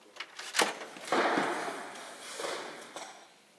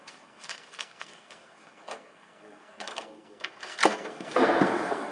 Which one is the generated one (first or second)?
second